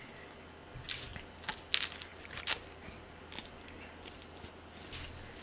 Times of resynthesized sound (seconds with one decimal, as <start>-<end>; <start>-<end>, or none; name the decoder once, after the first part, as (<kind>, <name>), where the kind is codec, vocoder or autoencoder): 2.1-3.2 (vocoder, BigVGAN v2)